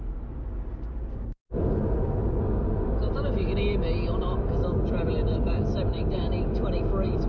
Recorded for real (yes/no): yes